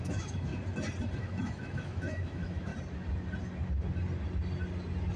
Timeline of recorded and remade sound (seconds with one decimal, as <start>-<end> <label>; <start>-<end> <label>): 0.0-0.5 remade; 0.5-1.2 recorded; 1.2-2.7 remade; 2.7-5.2 recorded